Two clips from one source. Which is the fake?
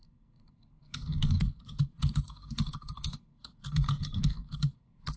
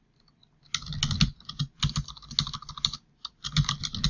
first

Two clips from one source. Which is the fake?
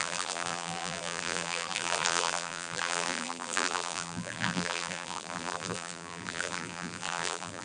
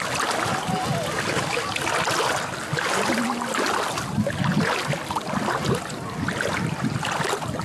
first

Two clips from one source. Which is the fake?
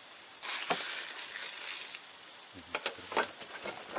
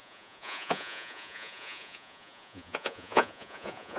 second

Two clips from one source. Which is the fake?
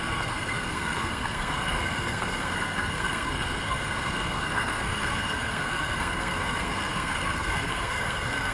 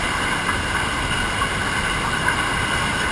first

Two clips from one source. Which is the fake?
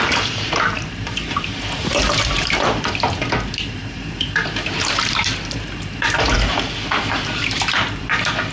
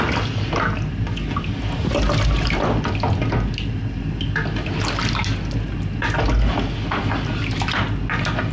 first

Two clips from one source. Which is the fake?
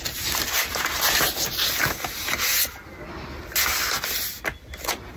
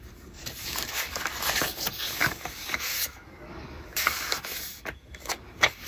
second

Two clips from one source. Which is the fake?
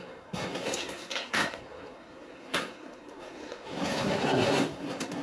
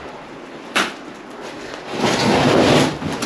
first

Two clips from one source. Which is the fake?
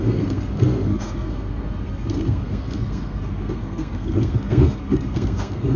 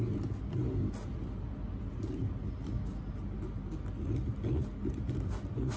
first